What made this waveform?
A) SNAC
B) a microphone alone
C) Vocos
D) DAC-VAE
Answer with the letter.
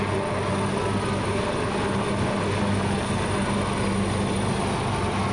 B